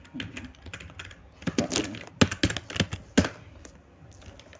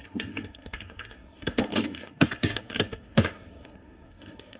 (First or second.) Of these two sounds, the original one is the first